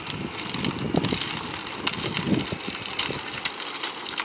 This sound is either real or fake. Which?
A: real